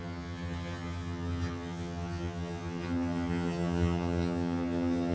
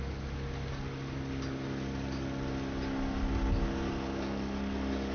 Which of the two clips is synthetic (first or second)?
first